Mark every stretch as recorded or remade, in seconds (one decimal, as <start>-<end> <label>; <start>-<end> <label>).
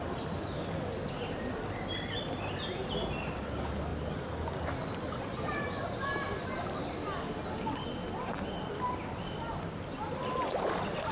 0.0-11.1 recorded